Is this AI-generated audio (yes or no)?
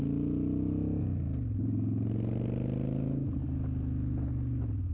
no